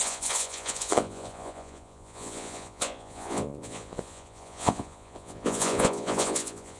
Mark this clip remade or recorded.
remade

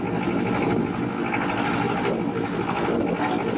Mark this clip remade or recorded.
recorded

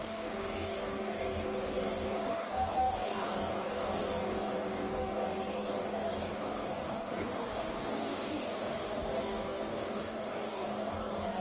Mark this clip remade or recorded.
remade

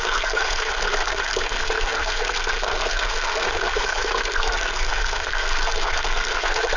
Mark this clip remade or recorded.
remade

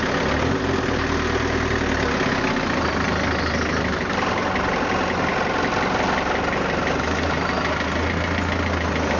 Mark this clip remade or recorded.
recorded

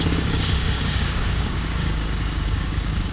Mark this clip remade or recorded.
remade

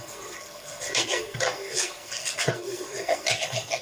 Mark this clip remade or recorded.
remade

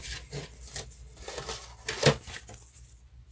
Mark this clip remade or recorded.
recorded